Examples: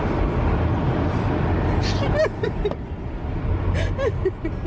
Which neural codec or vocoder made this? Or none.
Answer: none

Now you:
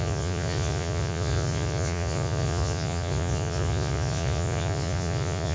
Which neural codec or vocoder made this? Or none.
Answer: vocoder, Vocos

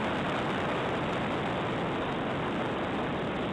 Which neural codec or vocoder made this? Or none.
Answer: none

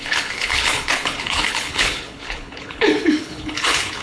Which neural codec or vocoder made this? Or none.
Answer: codec, HILCodec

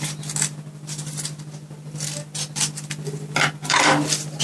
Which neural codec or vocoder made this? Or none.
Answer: vocoder, BigVGAN v2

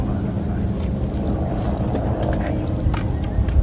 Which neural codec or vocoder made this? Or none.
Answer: none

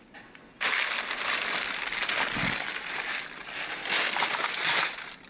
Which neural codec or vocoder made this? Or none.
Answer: none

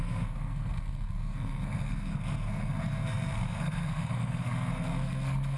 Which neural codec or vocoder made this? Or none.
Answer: codec, SNAC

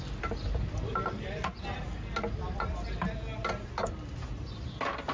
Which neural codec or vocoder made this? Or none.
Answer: none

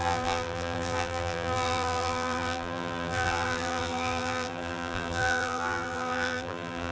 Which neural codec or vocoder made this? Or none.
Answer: vocoder, BigVGAN v2